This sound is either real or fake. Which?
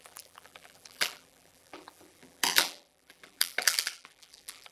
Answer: fake